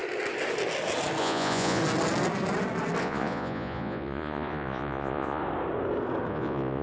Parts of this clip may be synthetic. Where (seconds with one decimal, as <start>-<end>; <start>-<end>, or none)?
1.2-1.8; 3.0-5.4; 6.3-6.8